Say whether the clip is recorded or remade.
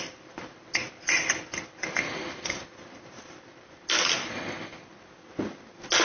recorded